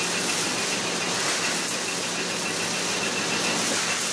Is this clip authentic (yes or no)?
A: yes